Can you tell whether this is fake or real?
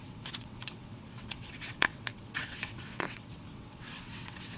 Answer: fake